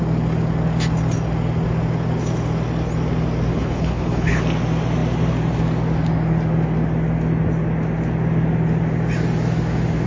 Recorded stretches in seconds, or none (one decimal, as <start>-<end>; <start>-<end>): 0.0-3.5; 4.4-10.1